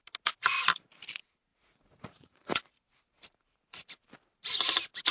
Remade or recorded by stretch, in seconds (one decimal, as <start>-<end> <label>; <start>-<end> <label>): 0.0-1.5 recorded; 1.5-2.7 remade; 2.7-5.1 recorded